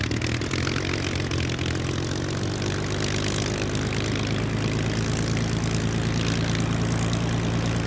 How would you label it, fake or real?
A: real